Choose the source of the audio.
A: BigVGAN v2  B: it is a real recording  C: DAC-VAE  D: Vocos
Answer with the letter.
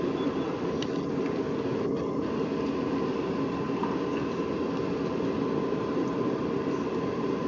B